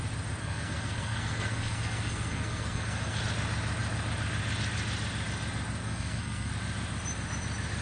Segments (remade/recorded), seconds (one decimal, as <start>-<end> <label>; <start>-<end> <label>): 0.0-0.4 recorded; 0.4-3.2 remade; 3.2-5.8 recorded; 5.8-6.5 remade; 6.5-7.8 recorded

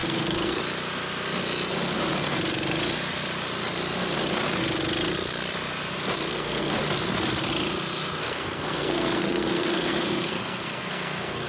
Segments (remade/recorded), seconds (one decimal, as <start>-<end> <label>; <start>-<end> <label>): 0.0-0.6 remade; 0.6-6.3 recorded; 6.3-6.8 remade; 6.8-8.2 recorded; 8.2-11.5 remade

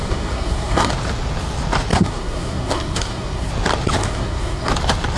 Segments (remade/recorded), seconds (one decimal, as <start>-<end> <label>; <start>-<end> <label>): 0.0-0.9 remade; 0.9-1.9 recorded; 1.9-3.5 remade; 3.5-4.0 recorded; 4.0-4.7 remade; 4.7-5.2 recorded

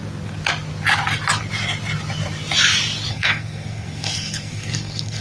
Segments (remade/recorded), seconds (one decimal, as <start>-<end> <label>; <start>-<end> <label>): 0.0-3.1 recorded; 3.1-5.2 remade

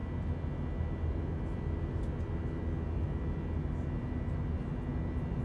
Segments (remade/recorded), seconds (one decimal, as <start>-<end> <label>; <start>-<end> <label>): 0.0-5.4 recorded

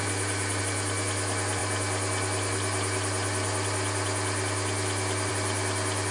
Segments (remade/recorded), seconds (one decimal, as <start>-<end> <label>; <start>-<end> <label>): 0.0-6.1 recorded

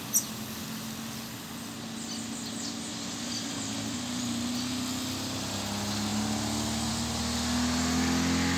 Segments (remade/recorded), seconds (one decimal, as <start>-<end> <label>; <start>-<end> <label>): 0.0-8.6 recorded